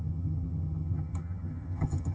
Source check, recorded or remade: remade